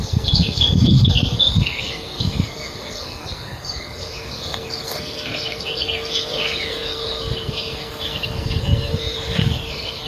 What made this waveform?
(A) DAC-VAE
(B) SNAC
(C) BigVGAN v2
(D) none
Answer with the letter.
B